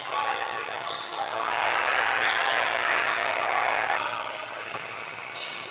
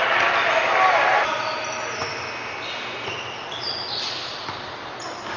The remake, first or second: first